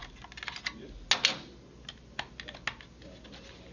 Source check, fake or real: real